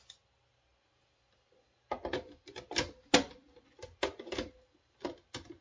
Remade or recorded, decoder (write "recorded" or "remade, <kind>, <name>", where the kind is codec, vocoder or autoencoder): recorded